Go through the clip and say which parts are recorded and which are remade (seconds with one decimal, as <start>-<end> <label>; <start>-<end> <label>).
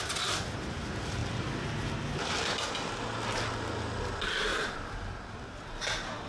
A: 0.0-6.3 recorded